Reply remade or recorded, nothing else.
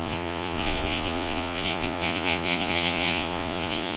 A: remade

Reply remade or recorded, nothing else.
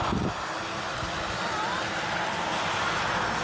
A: recorded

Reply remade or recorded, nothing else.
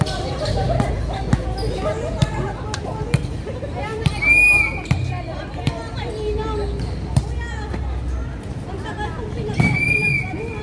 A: recorded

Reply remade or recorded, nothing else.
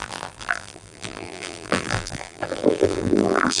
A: remade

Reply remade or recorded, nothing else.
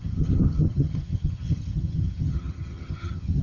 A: remade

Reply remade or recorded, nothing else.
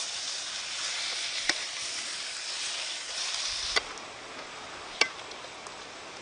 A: recorded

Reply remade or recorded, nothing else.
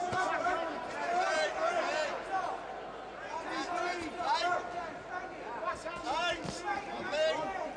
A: recorded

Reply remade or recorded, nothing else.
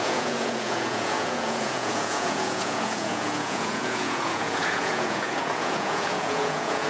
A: remade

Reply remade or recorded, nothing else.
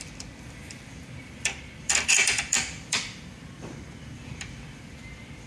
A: remade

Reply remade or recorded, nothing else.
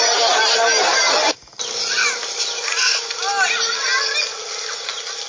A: recorded